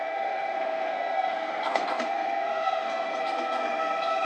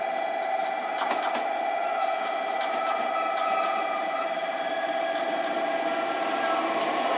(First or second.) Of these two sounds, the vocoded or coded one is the first